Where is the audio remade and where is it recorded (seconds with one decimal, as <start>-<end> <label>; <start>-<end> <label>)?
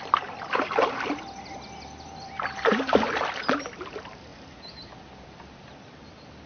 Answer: 0.0-6.5 recorded